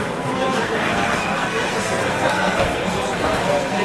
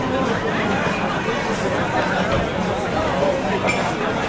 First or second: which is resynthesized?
first